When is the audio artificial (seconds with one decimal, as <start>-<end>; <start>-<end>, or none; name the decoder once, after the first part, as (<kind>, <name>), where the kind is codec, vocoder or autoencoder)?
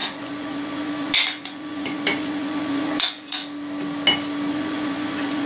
0.0-3.4 (vocoder, Vocos); 4.5-5.5